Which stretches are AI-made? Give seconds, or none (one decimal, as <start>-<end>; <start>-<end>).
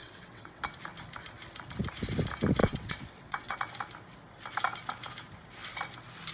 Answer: 0.0-0.6; 2.6-3.6